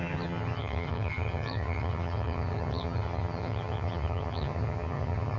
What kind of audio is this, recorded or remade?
remade